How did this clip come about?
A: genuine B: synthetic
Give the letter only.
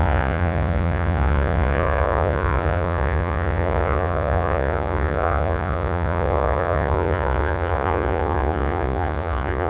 B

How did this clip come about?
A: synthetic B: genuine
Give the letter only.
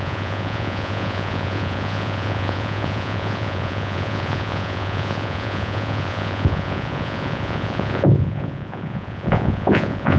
A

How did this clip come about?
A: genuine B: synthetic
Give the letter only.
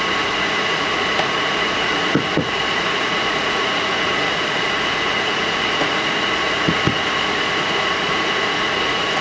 B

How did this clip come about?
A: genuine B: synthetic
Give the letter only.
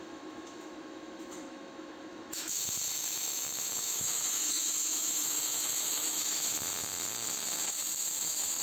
B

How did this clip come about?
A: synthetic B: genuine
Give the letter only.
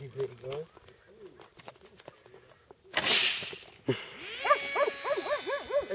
B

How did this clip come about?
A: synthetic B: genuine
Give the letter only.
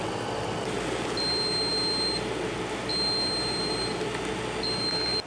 B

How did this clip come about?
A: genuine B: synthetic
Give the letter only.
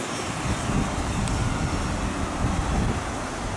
A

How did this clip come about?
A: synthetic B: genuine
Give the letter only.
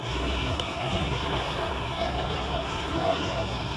A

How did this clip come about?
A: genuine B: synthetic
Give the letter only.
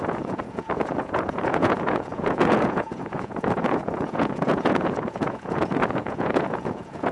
B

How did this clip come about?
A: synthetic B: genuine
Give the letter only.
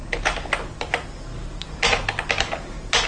B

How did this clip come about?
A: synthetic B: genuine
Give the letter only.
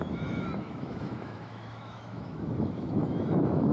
A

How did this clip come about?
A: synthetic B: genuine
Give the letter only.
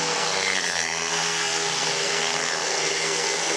A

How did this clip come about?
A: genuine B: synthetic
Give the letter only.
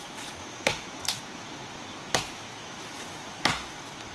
B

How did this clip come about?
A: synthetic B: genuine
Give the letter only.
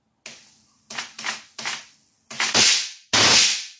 B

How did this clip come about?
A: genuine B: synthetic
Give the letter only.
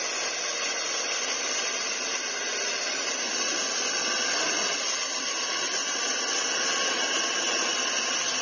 A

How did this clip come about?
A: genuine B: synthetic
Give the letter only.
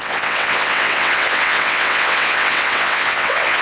B